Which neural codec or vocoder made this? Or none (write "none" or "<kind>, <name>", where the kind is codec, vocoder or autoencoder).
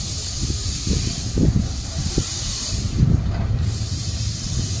vocoder, BigVGAN v2